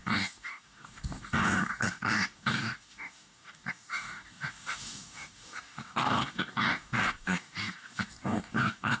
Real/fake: fake